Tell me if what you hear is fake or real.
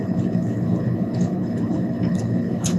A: fake